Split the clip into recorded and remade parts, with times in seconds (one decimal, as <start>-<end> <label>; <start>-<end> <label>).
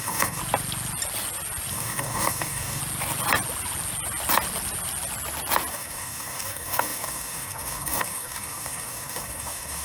0.0-0.4 remade; 0.4-1.7 recorded; 1.7-2.8 remade; 2.8-5.7 recorded; 5.7-9.8 remade